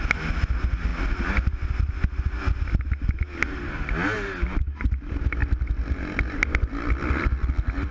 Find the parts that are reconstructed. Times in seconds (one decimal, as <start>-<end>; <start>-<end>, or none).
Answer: 5.4-7.9